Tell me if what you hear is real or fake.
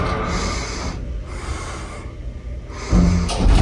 real